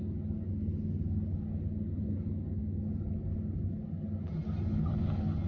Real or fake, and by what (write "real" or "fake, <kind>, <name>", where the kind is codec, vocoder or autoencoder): real